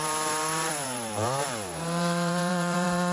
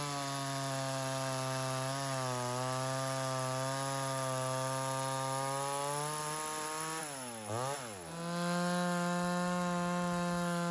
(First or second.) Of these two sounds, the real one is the second